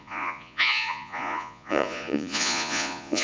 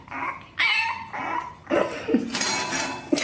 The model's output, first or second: first